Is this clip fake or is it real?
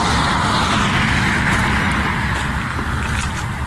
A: real